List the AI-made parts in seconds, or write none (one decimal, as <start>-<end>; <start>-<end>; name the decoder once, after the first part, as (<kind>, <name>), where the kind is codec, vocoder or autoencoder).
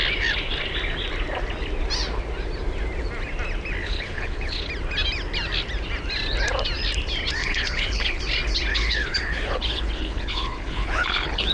3.8-4.7 (codec, HILCodec); 7.4-8.2; 8.7-11.5